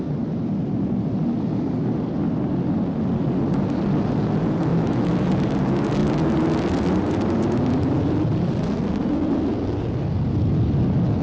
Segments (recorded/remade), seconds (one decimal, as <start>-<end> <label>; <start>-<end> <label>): 0.0-4.7 recorded; 4.7-5.3 remade; 5.3-11.2 recorded

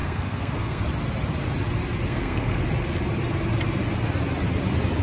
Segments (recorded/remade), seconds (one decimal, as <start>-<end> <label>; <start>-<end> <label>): 0.0-0.8 remade; 0.8-2.1 recorded; 2.1-2.6 remade; 2.6-5.0 recorded

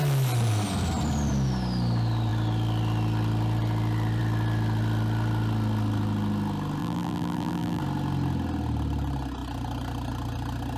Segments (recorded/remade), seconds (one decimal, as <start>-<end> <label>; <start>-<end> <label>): 0.0-6.8 recorded; 6.8-7.8 remade; 7.8-10.8 recorded

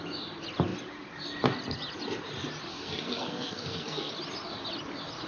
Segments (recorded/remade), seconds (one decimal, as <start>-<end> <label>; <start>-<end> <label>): 0.0-2.7 recorded; 2.7-4.1 remade; 4.1-5.3 recorded

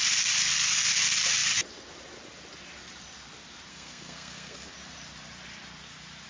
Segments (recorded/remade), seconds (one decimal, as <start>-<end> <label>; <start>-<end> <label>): 0.0-3.7 recorded; 3.7-4.7 remade; 4.7-6.3 recorded

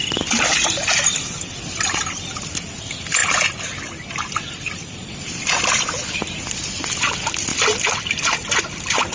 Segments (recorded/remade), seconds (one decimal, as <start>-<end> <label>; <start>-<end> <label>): 0.0-9.1 recorded

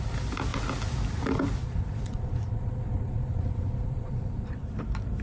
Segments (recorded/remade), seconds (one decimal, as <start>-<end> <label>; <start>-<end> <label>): 0.0-1.6 recorded; 1.6-4.7 remade; 4.7-5.2 recorded

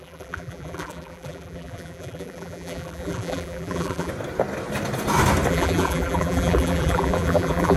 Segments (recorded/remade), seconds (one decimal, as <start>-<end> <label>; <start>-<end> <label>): 0.0-4.1 remade; 4.1-5.5 recorded; 5.5-7.8 remade